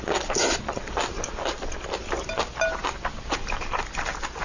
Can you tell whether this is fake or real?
real